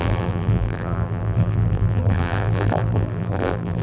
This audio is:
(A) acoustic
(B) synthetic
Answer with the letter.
B